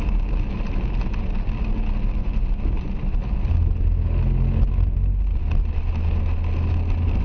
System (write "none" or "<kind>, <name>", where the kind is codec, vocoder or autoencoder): none